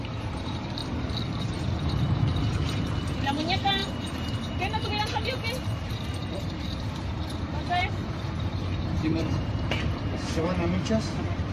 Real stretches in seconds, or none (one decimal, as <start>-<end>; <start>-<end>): 0.8-1.4

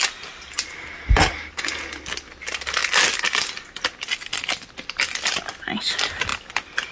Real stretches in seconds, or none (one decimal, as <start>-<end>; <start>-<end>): 0.0-6.9

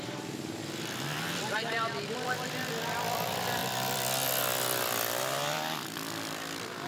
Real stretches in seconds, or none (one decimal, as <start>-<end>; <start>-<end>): none

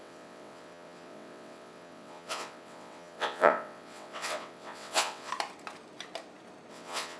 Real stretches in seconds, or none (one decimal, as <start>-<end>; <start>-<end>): 5.3-6.7

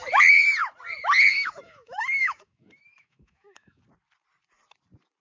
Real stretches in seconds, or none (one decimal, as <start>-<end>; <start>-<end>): 0.0-1.3; 3.8-5.2

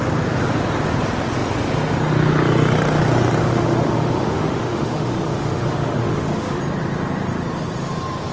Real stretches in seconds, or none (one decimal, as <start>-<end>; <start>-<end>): 0.0-3.4; 6.6-8.3